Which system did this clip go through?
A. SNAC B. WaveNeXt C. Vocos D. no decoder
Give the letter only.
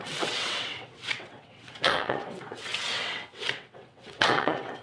B